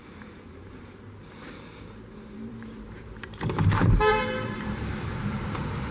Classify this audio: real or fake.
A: fake